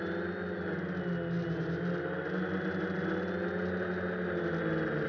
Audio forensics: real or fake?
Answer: real